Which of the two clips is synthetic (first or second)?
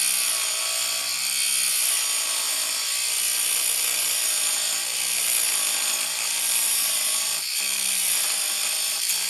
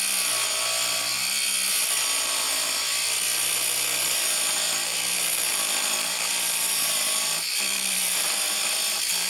second